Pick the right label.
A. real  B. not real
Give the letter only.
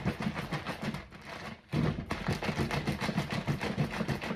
A